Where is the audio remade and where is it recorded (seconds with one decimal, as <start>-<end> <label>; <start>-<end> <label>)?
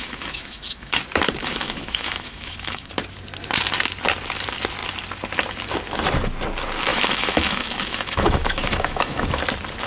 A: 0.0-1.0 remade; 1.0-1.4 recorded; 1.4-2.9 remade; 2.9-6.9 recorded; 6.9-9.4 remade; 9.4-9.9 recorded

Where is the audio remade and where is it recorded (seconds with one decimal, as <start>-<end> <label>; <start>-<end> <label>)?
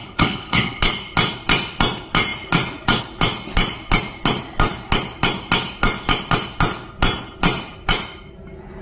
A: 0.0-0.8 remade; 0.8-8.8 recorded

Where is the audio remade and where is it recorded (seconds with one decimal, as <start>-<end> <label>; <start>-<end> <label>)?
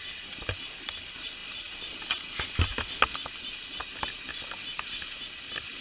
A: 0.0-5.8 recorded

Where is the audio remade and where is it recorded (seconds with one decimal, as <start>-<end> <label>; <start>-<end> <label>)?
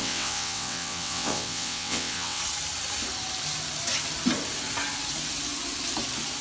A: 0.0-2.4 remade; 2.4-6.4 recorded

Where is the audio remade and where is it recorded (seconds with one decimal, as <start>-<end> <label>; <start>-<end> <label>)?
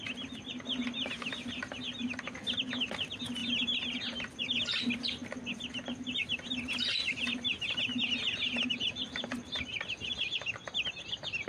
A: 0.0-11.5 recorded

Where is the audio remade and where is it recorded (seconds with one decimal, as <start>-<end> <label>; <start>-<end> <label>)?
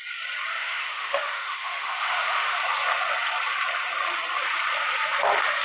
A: 0.0-0.5 recorded; 0.5-2.6 remade; 2.6-5.6 recorded